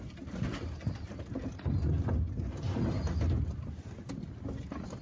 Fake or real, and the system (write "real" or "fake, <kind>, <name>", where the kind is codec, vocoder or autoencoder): real